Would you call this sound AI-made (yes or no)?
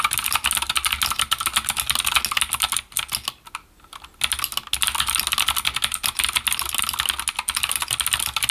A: no